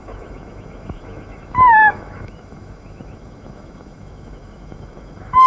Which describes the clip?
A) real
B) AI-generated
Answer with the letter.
B